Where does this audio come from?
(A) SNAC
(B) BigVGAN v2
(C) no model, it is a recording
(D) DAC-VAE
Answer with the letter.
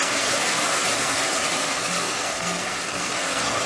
A